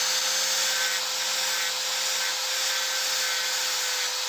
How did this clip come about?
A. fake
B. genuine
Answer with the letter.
B